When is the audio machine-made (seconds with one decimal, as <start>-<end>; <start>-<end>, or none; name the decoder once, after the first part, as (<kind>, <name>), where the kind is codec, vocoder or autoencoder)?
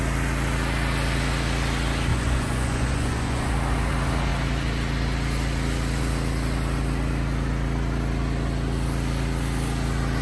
2.1-3.5 (vocoder, Vocos)